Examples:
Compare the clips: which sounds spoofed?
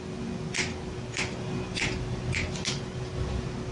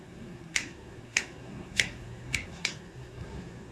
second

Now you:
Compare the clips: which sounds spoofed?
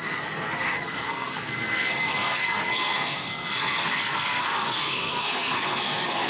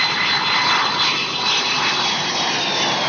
first